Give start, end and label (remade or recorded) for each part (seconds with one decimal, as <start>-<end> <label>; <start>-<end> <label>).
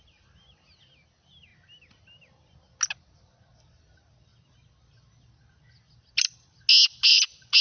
0.0-7.6 recorded